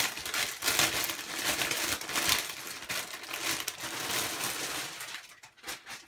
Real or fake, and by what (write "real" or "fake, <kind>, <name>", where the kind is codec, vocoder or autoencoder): real